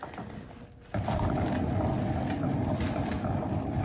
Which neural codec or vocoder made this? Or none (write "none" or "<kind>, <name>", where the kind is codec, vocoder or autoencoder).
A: none